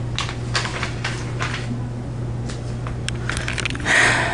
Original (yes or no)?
yes